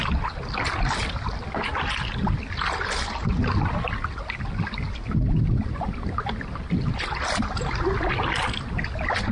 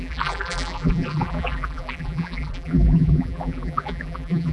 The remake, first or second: second